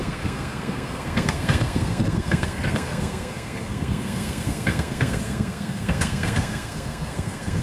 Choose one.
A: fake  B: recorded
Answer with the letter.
A